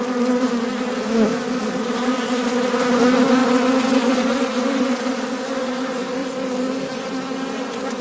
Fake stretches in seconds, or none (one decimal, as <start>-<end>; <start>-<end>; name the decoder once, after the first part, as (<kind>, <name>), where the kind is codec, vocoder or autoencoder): 1.3-2.0 (vocoder, BigVGAN v2); 3.4-5.1; 6.2-7.0